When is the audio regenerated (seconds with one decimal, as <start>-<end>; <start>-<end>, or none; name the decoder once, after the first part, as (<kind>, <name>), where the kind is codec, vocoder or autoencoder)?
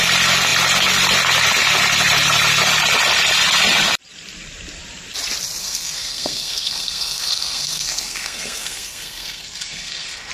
5.6-10.3 (codec, SNAC)